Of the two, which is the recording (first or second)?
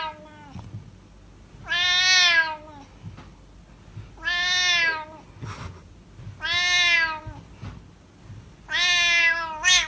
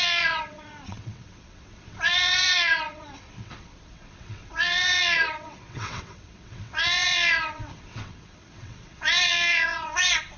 first